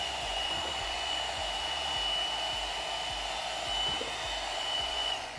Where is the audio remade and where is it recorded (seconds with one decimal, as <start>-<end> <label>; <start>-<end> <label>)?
0.0-1.4 remade; 1.4-4.6 recorded; 4.6-5.4 remade